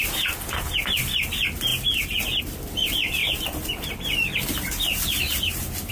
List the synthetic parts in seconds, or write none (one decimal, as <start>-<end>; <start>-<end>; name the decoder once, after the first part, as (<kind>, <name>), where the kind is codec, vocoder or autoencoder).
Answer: 0.0-1.7 (vocoder, BigVGAN v2); 2.4-5.9